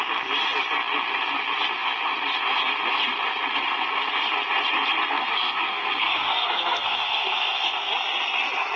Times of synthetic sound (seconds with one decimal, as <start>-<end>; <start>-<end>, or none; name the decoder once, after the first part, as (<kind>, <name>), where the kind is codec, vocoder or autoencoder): 5.0-7.9 (codec, SNAC)